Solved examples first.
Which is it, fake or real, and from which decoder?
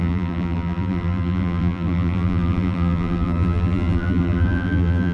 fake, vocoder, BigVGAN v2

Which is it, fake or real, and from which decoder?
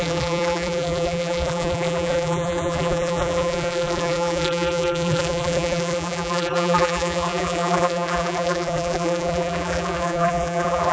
fake, vocoder, BigVGAN v2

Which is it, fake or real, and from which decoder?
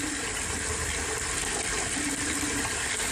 fake, vocoder, BigVGAN v2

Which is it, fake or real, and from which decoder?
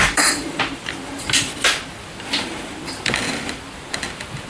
fake, vocoder, BigVGAN v2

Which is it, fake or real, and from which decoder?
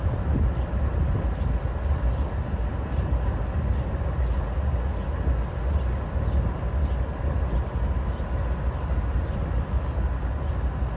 real